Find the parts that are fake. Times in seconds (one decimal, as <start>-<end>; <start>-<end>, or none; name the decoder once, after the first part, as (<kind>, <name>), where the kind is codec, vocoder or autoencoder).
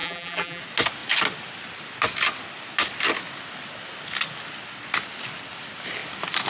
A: 0.0-0.6 (vocoder, BigVGAN v2)